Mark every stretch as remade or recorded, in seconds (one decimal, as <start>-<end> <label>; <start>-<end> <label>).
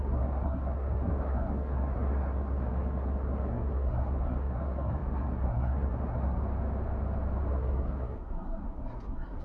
0.0-6.4 remade; 6.4-7.5 recorded; 7.5-9.4 remade